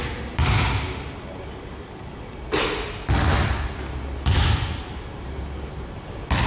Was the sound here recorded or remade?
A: recorded